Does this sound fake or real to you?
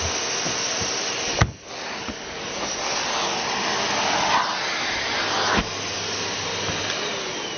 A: real